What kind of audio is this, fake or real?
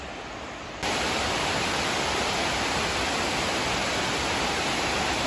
real